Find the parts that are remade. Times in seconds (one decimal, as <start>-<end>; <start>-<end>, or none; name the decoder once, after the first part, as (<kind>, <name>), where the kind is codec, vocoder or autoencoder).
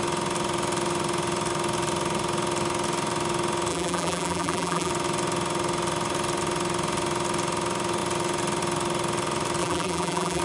3.7-4.9 (vocoder, BigVGAN v2); 9.6-10.4